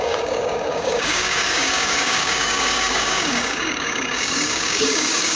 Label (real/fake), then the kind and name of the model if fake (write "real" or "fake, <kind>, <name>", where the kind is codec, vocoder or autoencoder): fake, codec, DAC